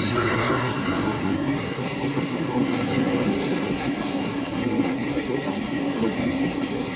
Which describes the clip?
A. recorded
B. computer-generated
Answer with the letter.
B